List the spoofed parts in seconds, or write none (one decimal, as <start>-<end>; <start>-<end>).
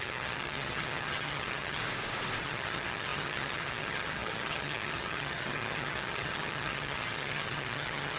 0.0-1.8; 2.4-8.2